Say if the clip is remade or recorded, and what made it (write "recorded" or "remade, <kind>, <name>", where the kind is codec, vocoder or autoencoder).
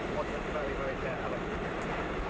remade, vocoder, BigVGAN v2